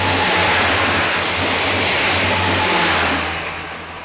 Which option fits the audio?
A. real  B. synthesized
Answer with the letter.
A